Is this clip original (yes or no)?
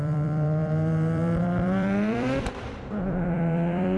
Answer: no